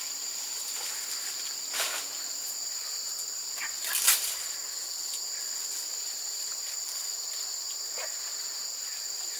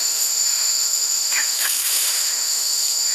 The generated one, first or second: second